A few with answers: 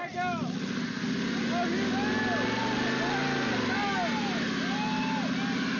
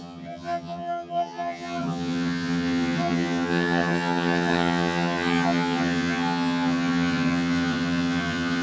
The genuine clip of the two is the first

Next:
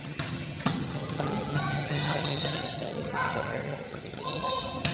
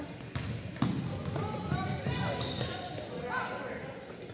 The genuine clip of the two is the second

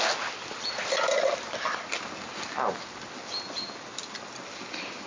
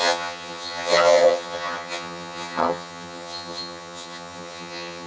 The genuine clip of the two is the first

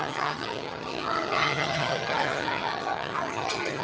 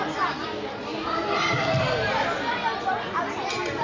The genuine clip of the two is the second